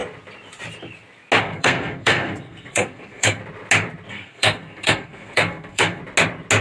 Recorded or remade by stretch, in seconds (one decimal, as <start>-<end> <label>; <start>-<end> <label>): 0.0-1.4 recorded; 1.4-3.4 remade; 3.4-4.1 recorded; 4.1-6.0 remade; 6.0-6.6 recorded